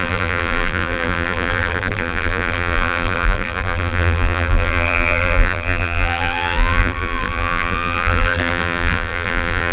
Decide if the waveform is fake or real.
fake